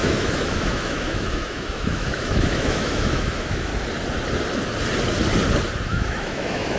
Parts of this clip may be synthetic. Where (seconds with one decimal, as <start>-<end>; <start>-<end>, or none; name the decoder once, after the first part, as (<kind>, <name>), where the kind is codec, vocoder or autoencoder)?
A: 0.0-3.7 (autoencoder, DAC-VAE); 5.9-6.8